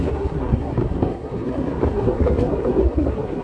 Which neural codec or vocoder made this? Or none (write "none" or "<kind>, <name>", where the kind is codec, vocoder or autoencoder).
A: codec, SNAC